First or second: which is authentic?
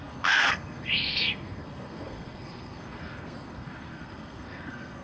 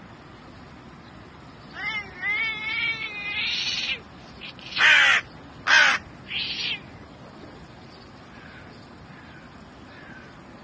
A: second